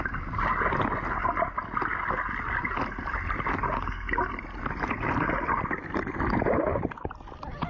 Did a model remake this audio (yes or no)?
no